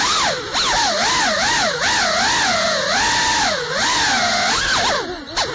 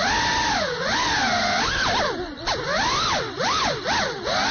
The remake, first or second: second